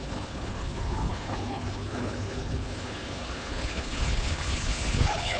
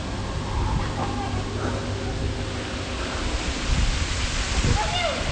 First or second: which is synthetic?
first